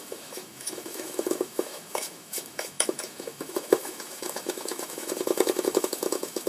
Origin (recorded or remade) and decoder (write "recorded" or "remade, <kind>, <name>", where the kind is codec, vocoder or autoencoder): remade, autoencoder, DAC-VAE